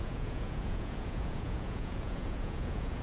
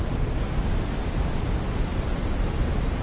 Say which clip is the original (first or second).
second